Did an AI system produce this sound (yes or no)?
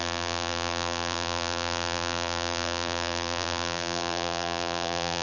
yes